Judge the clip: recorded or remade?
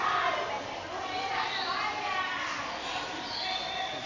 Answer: recorded